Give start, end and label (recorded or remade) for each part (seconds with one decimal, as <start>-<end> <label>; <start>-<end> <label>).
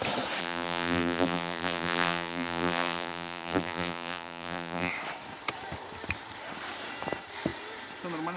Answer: 0.0-0.4 recorded; 0.4-4.9 remade; 4.9-8.4 recorded